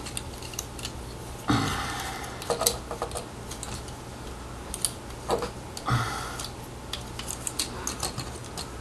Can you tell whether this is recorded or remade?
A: recorded